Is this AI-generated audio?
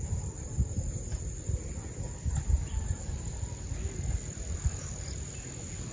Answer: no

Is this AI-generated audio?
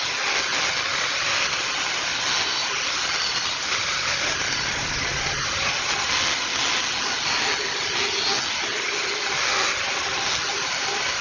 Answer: no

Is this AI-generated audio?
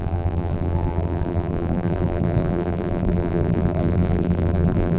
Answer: yes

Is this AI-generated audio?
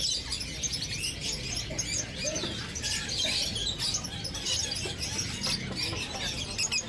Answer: no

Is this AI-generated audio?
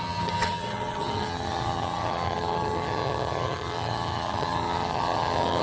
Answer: yes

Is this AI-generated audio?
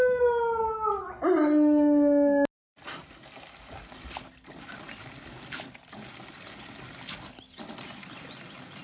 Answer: no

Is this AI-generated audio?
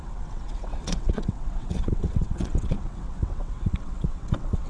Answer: yes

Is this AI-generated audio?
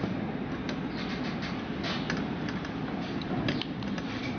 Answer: no